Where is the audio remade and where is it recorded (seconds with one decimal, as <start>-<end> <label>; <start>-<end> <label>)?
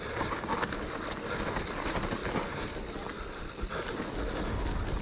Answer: 0.0-5.0 recorded